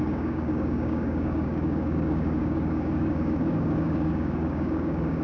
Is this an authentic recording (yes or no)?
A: no